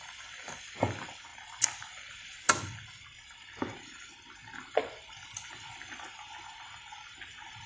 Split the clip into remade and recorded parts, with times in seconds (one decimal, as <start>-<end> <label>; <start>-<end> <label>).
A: 0.0-7.7 recorded